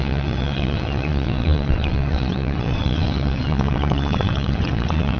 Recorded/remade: remade